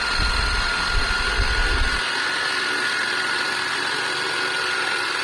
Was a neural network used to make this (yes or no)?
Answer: no